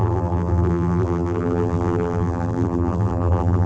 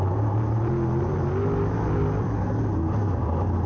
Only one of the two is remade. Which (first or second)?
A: first